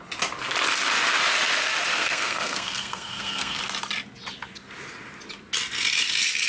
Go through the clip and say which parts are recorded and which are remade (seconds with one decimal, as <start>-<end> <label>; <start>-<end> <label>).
0.0-1.9 recorded; 1.9-3.6 remade; 3.6-6.5 recorded